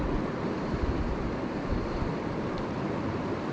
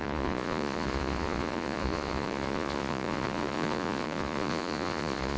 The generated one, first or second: second